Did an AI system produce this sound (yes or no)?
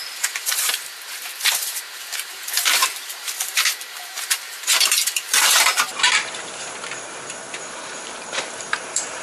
yes